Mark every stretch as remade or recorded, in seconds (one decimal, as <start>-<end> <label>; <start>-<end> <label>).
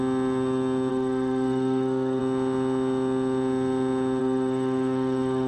0.0-0.9 recorded; 0.9-2.2 remade; 2.2-4.2 recorded; 4.2-5.5 remade